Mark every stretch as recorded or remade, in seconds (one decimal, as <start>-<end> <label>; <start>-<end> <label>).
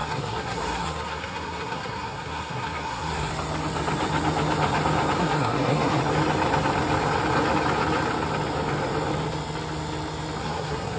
0.0-3.3 remade; 3.3-5.2 recorded; 5.2-6.0 remade; 6.0-10.4 recorded; 10.4-11.0 remade